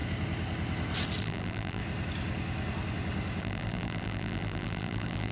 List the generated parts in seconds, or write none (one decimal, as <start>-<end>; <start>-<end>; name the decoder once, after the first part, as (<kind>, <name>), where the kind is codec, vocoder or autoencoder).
1.2-1.8 (vocoder, BigVGAN v2); 3.4-5.3